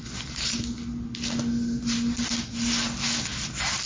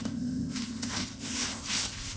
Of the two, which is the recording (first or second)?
first